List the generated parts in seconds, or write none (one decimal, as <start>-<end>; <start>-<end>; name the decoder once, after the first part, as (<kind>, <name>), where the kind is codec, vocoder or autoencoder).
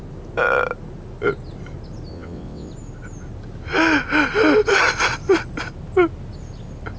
2.1-2.7 (vocoder, WaveNeXt)